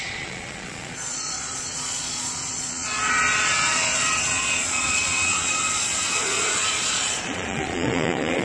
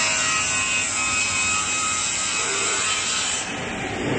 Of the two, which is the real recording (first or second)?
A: second